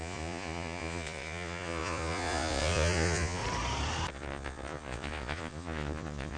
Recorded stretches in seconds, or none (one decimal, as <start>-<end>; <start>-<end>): 3.4-4.1